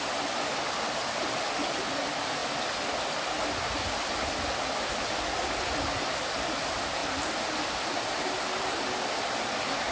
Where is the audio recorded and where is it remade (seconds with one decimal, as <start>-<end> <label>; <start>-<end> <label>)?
0.0-9.9 recorded